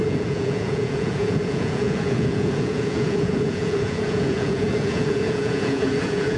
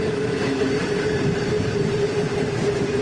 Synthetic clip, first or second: first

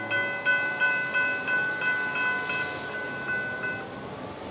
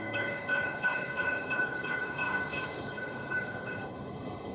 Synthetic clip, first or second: second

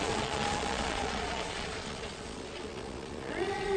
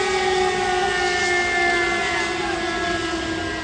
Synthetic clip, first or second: first